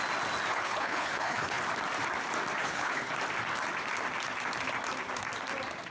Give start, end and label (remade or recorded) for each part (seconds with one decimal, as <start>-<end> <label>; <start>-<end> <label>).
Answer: 0.0-0.5 recorded; 0.5-1.6 remade; 1.6-2.6 recorded; 2.6-3.1 remade; 3.1-5.9 recorded